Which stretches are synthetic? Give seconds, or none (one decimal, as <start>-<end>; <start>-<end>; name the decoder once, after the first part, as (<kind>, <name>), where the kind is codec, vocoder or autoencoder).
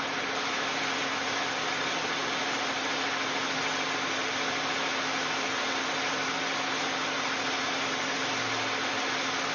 none